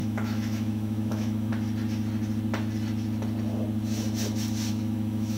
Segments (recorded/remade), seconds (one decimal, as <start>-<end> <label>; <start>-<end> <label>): 0.0-1.5 remade; 1.5-4.7 recorded; 4.7-5.4 remade